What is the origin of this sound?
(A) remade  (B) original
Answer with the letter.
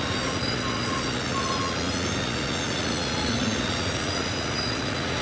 A